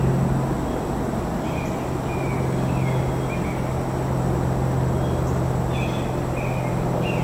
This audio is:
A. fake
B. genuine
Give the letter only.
B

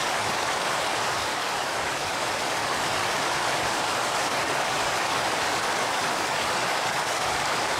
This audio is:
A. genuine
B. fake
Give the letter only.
B